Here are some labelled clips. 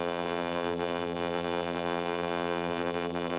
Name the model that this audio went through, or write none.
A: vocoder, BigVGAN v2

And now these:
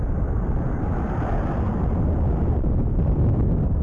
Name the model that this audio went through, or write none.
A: vocoder, BigVGAN v2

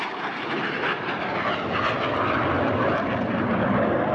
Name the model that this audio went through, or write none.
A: none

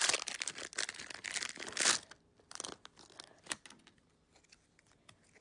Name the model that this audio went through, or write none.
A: none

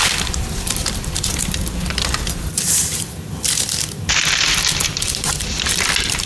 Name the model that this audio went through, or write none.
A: vocoder, BigVGAN v2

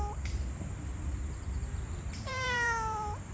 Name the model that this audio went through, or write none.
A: vocoder, BigVGAN v2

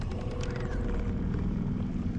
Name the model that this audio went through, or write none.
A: vocoder, BigVGAN v2